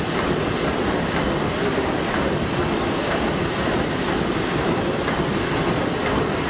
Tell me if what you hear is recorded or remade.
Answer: remade